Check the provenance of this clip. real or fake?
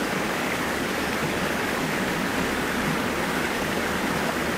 fake